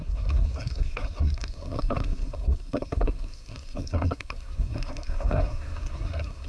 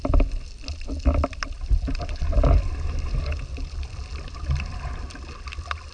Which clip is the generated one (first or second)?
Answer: first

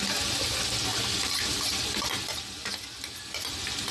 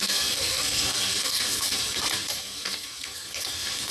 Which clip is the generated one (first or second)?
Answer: second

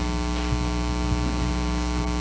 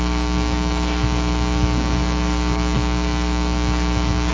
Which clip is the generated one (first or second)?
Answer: second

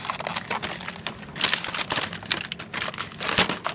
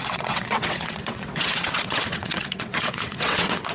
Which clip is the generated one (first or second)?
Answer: second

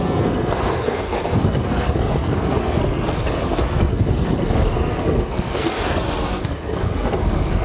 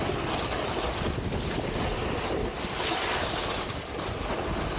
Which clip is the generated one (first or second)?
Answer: first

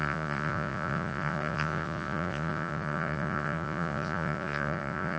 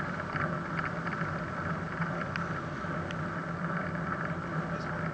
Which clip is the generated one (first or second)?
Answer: first